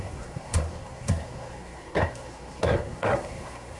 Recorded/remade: remade